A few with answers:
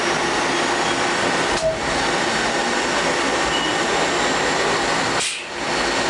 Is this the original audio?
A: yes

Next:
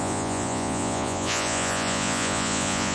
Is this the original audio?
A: no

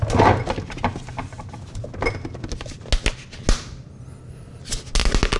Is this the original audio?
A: yes